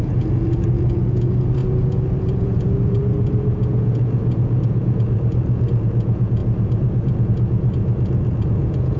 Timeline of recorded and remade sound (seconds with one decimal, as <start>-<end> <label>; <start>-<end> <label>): 0.0-9.0 remade